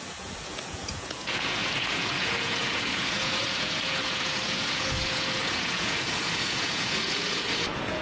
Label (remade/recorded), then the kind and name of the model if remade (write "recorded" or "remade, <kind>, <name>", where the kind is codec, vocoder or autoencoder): remade, vocoder, Vocos